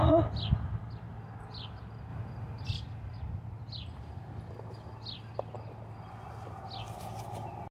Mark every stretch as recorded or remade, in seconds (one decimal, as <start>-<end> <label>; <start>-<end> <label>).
0.0-7.7 recorded